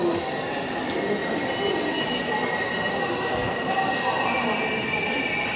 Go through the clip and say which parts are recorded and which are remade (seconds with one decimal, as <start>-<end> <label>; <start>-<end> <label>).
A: 0.0-5.6 recorded